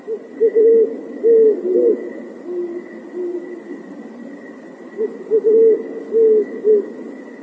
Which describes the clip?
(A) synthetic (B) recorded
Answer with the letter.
B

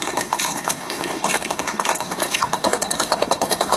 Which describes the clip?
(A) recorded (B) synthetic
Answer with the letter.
B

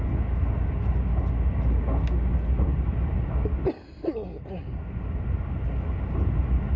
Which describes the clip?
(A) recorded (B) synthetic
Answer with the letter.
A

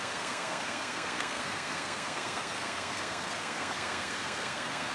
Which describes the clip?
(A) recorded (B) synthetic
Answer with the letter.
B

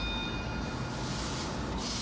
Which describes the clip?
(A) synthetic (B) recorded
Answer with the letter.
B